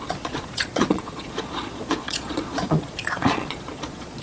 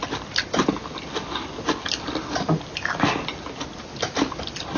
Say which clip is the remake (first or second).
first